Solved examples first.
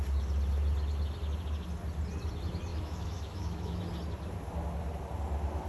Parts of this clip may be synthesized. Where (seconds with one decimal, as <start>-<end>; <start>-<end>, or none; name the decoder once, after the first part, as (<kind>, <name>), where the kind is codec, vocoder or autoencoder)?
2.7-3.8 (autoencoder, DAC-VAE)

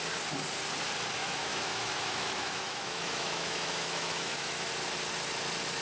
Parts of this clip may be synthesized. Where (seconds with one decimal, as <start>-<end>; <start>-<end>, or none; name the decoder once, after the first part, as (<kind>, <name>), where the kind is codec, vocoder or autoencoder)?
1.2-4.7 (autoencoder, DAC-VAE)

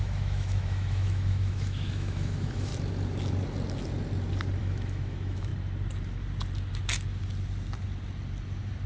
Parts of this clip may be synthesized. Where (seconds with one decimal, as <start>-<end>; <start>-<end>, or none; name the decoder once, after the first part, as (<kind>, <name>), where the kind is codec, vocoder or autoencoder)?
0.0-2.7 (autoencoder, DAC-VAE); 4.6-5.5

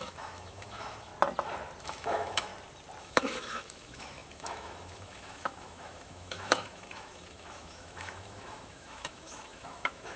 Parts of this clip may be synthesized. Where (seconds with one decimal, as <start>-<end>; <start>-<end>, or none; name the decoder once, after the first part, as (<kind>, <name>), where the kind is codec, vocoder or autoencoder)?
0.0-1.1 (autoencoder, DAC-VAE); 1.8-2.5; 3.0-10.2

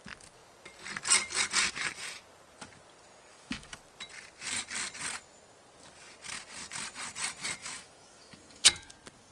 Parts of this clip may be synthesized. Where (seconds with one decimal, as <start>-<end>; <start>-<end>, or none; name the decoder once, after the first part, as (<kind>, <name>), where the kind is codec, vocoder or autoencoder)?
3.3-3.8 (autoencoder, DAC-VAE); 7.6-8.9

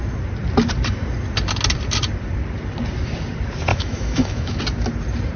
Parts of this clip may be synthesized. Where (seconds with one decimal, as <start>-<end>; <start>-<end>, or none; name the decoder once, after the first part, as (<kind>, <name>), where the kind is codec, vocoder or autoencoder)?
3.7-4.6 (autoencoder, DAC-VAE)